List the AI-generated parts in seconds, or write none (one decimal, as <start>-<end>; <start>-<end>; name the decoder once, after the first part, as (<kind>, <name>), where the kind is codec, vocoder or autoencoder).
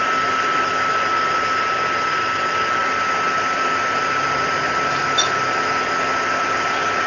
none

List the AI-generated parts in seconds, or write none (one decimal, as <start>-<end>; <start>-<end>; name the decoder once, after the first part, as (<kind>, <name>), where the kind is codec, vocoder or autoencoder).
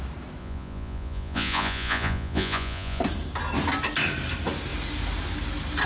0.4-3.0 (vocoder, Vocos)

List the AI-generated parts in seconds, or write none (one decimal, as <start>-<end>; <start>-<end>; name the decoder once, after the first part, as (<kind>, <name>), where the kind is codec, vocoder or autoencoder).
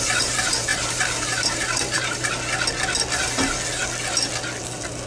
0.7-2.3 (vocoder, BigVGAN v2)